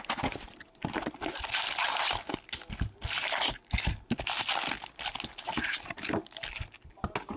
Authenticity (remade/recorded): recorded